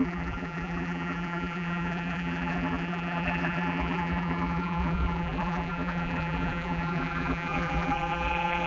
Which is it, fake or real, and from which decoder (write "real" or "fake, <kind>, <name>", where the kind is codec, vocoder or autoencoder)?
fake, vocoder, BigVGAN v2